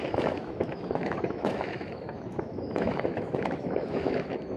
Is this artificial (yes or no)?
yes